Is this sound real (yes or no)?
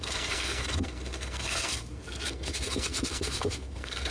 no